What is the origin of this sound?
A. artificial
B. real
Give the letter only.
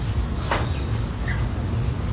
B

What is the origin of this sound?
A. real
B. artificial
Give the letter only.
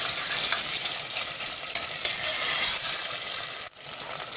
A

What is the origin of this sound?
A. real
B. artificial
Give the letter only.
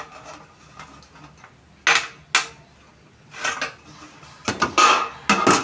A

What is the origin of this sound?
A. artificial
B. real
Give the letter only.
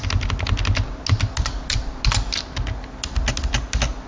B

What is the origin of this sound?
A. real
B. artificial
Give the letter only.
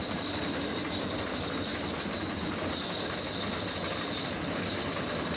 A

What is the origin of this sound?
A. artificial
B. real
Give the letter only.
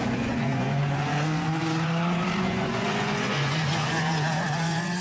A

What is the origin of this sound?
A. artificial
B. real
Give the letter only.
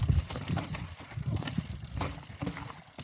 B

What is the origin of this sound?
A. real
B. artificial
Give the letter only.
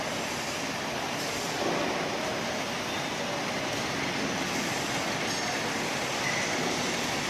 A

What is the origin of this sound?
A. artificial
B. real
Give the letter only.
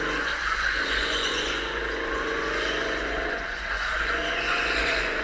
A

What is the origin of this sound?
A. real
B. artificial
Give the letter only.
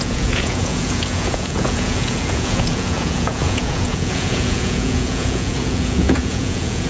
B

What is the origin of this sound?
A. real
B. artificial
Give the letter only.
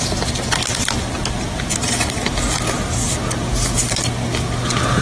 A